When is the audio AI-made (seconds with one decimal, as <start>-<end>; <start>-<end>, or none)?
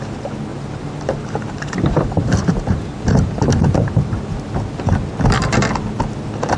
0.5-4.2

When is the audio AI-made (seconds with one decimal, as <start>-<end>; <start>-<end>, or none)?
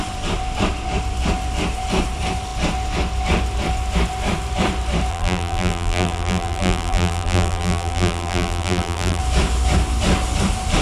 5.1-9.2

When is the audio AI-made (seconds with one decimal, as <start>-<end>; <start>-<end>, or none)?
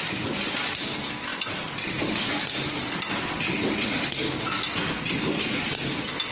none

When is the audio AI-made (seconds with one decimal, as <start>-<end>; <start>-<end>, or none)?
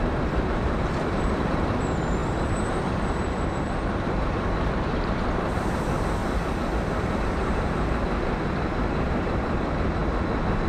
0.0-6.2; 6.8-8.0; 8.8-10.0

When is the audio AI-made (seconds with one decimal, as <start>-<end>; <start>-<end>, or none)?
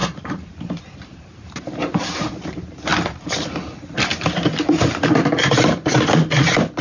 0.0-2.9; 3.6-4.1; 5.5-6.8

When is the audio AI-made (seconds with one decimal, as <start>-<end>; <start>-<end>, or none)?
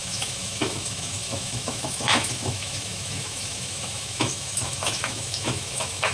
0.0-6.1